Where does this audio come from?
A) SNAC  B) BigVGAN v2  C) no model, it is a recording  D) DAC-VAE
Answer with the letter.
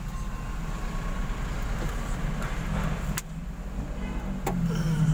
C